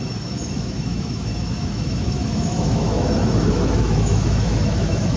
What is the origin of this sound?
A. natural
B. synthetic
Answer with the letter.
B